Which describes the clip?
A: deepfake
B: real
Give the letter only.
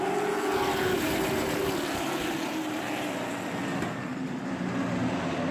B